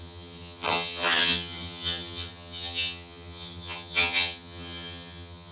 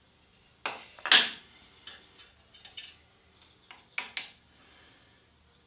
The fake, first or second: first